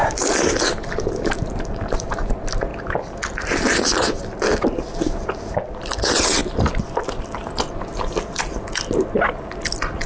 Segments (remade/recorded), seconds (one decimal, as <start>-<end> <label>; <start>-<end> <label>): 0.0-10.1 recorded